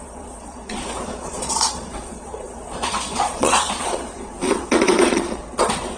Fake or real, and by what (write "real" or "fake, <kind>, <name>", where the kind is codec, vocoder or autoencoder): fake, vocoder, Vocos